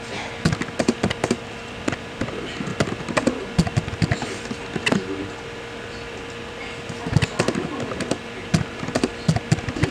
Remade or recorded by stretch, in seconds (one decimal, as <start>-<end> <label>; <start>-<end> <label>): 0.0-9.9 recorded